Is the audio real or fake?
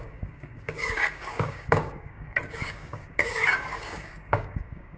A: fake